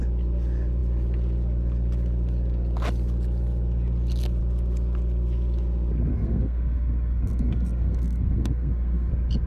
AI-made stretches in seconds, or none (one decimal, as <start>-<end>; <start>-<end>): 6.1-9.1